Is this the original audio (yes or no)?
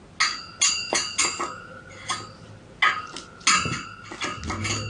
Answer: yes